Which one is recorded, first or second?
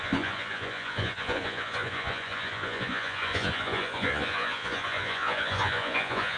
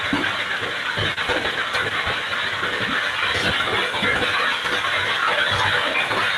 second